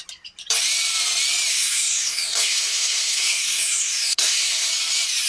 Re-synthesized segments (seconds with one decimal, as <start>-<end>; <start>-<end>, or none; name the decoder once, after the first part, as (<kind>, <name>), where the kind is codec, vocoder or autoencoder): 1.5-4.7 (codec, SNAC)